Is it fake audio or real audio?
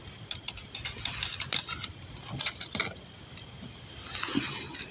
real